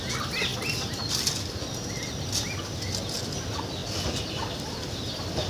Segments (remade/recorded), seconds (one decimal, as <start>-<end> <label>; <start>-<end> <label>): 0.0-5.5 recorded